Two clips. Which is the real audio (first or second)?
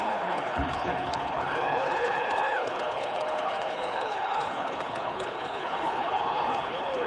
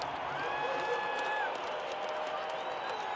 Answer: second